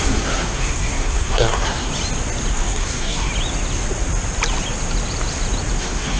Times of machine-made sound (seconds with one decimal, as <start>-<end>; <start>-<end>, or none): 0.0-1.9; 2.5-3.3; 5.8-6.2